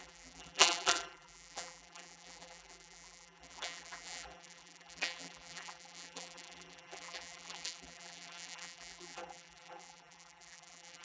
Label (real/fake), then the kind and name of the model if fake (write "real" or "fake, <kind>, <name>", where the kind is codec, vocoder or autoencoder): fake, vocoder, BigVGAN v2